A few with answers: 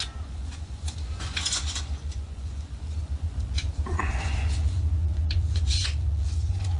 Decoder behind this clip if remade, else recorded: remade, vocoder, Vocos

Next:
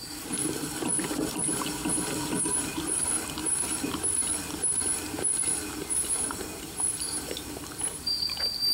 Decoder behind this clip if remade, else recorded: recorded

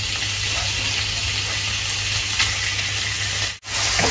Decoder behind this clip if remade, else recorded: recorded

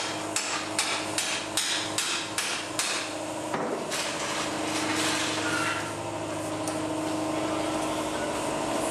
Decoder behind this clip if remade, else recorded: recorded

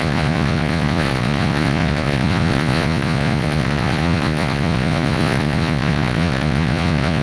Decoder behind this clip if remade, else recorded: remade, vocoder, Vocos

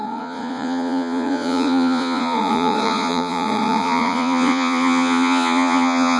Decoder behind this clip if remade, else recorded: remade, vocoder, Vocos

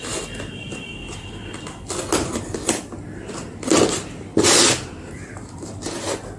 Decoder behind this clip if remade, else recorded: recorded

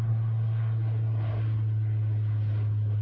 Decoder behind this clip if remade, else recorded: recorded